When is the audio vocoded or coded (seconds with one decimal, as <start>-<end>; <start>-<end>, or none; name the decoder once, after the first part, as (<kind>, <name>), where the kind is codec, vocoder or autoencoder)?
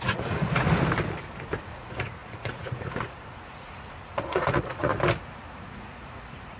0.0-0.7 (vocoder, Vocos); 1.6-4.9; 5.5-6.6